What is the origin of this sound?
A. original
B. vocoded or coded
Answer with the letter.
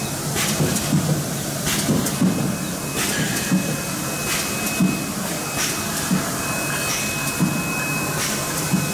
A